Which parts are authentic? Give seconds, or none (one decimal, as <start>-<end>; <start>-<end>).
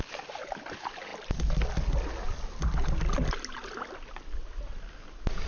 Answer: 0.0-5.5